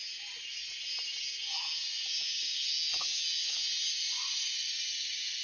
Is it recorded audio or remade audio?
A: recorded